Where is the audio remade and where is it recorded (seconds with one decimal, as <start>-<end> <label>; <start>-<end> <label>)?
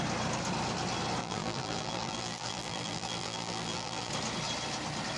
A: 0.0-1.2 recorded; 1.2-4.1 remade; 4.1-5.2 recorded